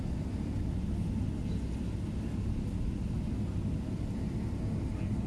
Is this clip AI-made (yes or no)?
no